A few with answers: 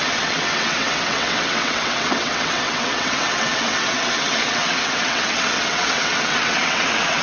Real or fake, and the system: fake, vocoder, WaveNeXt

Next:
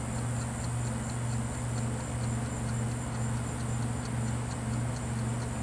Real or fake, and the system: real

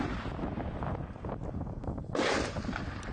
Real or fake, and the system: real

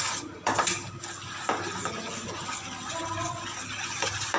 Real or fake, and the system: real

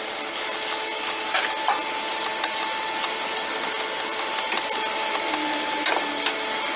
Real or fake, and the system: real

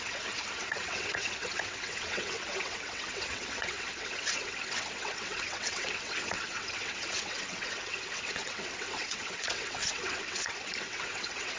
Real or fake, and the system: fake, vocoder, WaveNeXt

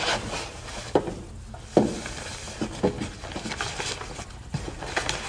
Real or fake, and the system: real